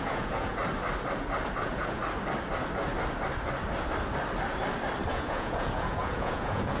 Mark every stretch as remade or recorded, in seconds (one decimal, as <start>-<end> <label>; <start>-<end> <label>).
0.0-0.6 remade; 0.6-1.6 recorded; 1.6-2.0 remade; 2.0-5.1 recorded; 5.1-6.8 remade